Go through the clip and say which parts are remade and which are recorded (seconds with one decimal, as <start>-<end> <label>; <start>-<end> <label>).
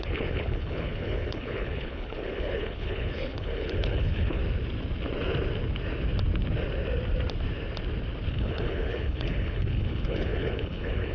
0.0-4.4 remade; 4.4-8.3 recorded; 8.3-11.1 remade